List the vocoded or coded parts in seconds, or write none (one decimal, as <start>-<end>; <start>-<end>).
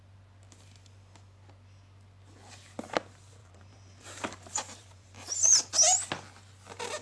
3.4-5.7